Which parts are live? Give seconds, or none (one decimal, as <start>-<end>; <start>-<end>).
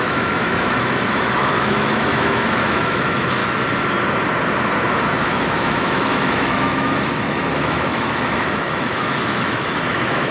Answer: 3.4-5.2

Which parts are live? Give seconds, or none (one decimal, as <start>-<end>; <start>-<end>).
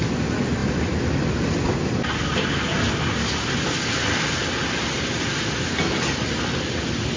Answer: 0.0-7.2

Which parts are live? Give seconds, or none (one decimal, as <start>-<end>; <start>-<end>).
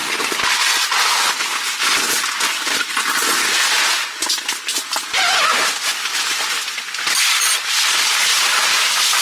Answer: 0.0-9.2